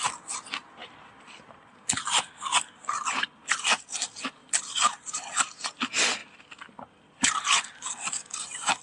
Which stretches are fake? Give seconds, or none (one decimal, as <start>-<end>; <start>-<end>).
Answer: 0.8-1.9; 4.4-5.8